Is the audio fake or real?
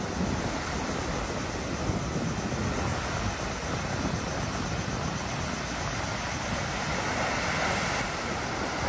real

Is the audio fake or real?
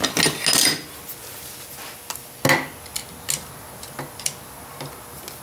real